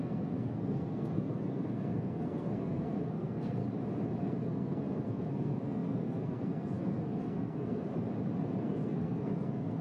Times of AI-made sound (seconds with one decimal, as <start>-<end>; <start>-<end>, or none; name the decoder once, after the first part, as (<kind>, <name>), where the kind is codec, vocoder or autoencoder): 0.0-3.6 (codec, SNAC); 4.2-7.9; 8.6-9.8